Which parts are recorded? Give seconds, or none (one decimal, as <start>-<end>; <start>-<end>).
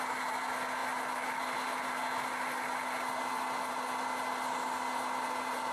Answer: 0.0-5.7